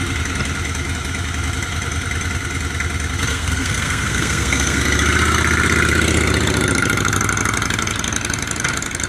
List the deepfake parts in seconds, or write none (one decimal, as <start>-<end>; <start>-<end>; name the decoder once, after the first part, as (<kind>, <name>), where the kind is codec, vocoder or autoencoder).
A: 3.3-4.8 (codec, SNAC)